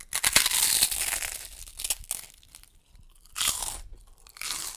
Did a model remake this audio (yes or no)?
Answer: no